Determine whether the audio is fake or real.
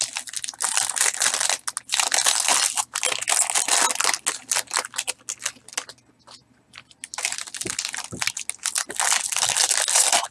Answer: real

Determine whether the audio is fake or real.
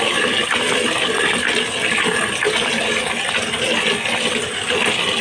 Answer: real